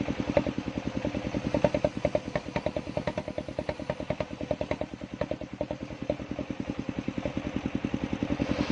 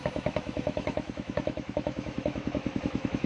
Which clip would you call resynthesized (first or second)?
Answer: second